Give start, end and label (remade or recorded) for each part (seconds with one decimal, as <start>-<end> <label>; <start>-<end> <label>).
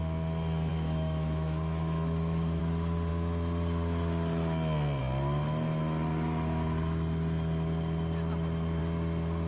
0.0-0.7 recorded; 0.7-2.6 remade; 2.6-9.5 recorded